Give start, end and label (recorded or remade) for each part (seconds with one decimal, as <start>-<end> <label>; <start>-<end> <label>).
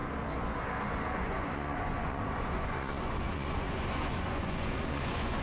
0.0-0.8 recorded; 0.8-5.4 remade